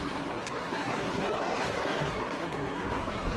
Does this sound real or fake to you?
fake